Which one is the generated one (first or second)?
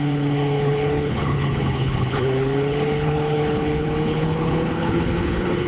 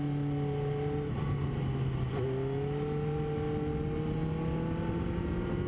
first